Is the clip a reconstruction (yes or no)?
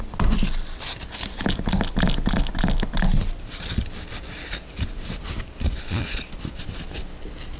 no